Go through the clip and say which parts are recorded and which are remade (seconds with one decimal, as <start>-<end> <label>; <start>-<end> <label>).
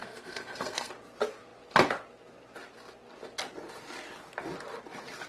0.0-0.9 remade; 0.9-5.3 recorded